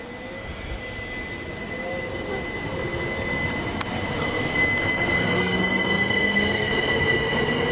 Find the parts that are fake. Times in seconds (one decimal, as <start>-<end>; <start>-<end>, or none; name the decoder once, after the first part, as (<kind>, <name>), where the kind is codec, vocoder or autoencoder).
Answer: 5.4-6.7 (codec, SNAC)